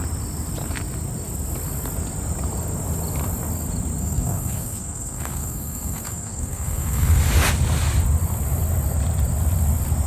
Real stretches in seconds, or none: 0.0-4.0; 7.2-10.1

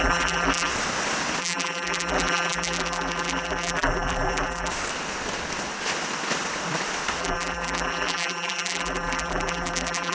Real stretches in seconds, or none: 0.7-1.4; 4.7-7.2

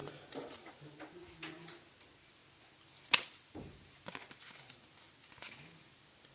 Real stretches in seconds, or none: 0.0-6.3

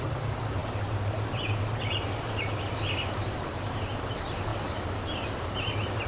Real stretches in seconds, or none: none

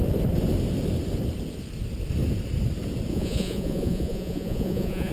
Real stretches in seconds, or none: 0.0-3.1